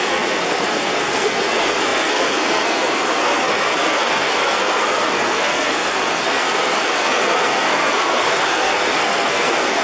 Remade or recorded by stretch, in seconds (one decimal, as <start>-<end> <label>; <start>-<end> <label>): 0.0-9.8 remade